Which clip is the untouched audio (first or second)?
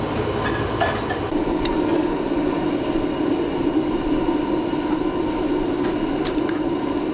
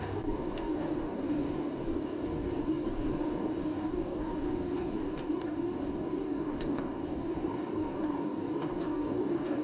first